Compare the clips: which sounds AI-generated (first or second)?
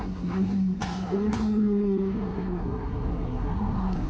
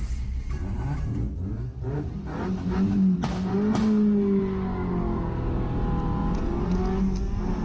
first